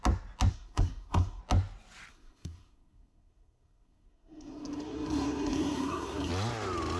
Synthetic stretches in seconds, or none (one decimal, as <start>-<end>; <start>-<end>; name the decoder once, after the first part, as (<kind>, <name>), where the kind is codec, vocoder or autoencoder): 0.5-1.4 (codec, SNAC); 2.1-6.3